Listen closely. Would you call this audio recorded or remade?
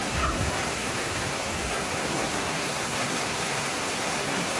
remade